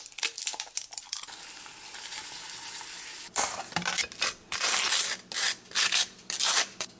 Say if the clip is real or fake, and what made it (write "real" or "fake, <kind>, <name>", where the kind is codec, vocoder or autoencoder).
real